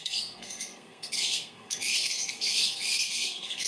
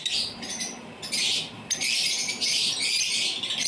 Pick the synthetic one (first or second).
first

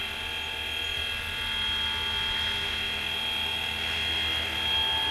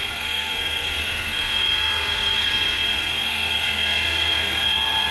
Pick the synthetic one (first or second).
second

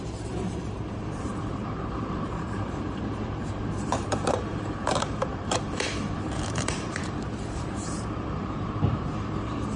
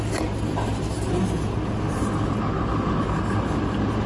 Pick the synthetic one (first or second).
first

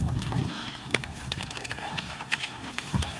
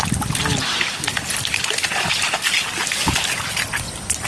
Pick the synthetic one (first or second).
first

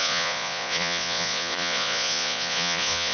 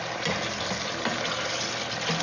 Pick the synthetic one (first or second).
first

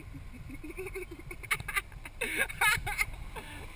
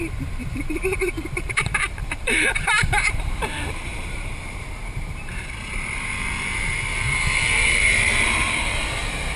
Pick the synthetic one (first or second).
second